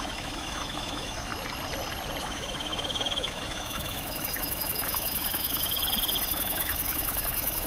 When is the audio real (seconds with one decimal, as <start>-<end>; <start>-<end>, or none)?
1.3-2.2; 5.8-6.3

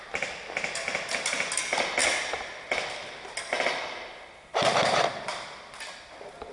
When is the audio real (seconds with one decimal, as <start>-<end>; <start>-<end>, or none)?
0.0-6.5